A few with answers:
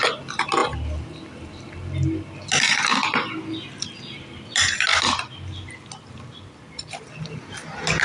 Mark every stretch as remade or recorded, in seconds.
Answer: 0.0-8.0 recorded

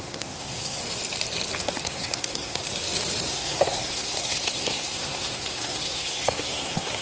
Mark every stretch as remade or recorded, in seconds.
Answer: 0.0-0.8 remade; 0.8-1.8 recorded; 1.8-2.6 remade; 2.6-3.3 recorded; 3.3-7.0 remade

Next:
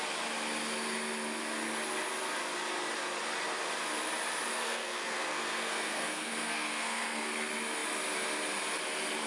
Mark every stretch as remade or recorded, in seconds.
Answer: 0.0-4.5 recorded; 4.5-7.3 remade; 7.3-9.3 recorded

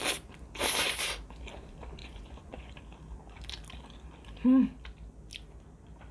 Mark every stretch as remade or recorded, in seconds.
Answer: 0.0-2.0 recorded; 2.0-2.8 remade; 2.8-6.1 recorded

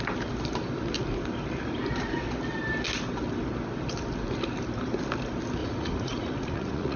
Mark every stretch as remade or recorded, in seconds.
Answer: 0.0-5.6 recorded; 5.6-7.0 remade